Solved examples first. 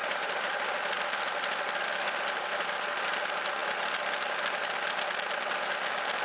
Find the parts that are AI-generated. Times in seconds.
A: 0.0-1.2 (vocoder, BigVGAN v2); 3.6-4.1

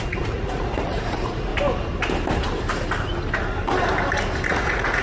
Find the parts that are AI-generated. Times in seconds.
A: 0.0-1.5 (vocoder, Vocos); 4.5-5.0

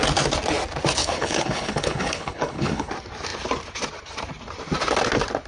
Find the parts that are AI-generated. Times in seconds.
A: 1.0-2.9 (codec, HILCodec)

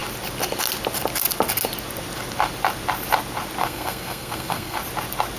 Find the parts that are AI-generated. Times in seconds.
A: 3.6-4.8 (codec, SNAC)

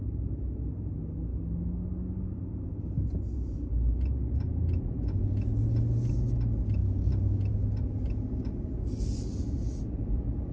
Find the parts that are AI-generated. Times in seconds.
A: none

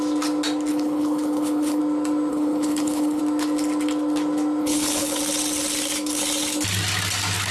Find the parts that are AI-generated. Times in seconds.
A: 0.7-1.8 (codec, HILCodec); 2.3-3.2; 4.6-5.2

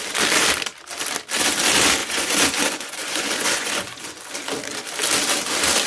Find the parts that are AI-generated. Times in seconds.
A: 2.0-4.2 (vocoder, Vocos)